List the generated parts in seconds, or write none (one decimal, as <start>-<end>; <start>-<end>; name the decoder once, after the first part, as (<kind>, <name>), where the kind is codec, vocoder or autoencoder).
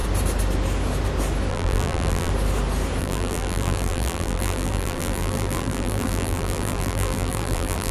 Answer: 1.5-2.3 (vocoder, BigVGAN v2); 3.0-7.9